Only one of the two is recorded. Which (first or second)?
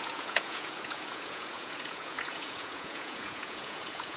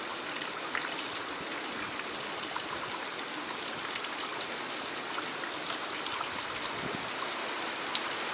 second